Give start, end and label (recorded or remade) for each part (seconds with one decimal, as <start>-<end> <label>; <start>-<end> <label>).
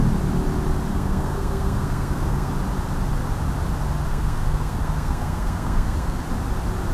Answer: 0.0-0.9 recorded; 0.9-2.5 remade; 2.5-4.1 recorded; 4.1-6.2 remade; 6.2-6.9 recorded